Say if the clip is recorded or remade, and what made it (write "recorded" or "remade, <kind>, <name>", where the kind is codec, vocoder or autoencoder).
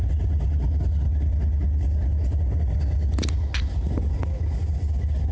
recorded